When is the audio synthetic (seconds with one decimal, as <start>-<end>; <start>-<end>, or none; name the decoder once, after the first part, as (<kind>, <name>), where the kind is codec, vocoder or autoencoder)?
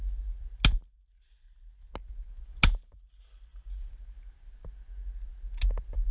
none